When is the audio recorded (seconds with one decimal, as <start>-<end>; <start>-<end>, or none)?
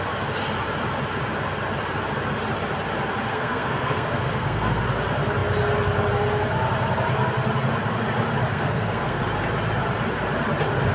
0.0-3.3; 4.8-8.5; 9.2-10.9